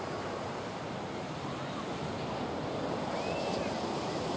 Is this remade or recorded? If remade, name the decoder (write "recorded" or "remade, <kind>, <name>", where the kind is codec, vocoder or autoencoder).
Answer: recorded